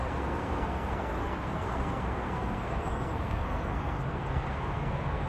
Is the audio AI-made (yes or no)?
yes